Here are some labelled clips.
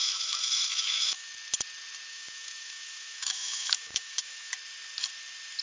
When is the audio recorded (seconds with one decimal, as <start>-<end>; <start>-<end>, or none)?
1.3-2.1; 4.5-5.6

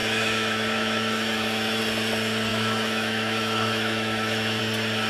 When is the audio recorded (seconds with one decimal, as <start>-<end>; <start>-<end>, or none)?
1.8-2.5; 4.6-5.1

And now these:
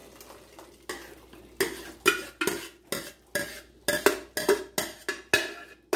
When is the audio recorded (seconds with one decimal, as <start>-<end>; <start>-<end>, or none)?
0.0-6.0

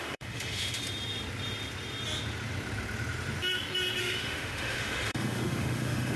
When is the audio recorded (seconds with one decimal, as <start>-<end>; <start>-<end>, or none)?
0.8-4.0